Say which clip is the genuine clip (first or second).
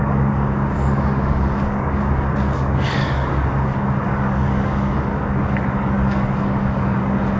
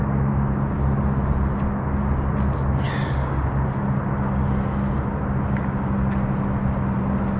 second